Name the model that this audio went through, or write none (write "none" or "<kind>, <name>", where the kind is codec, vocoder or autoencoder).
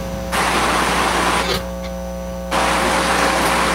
none